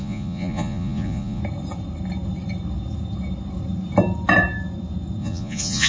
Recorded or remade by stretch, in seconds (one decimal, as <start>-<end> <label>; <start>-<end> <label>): 0.0-1.4 remade; 1.4-5.2 recorded; 5.2-5.9 remade